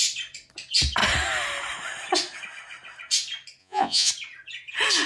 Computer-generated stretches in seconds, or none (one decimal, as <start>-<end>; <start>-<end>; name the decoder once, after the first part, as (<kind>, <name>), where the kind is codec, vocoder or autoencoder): 3.6-4.1 (vocoder, Vocos)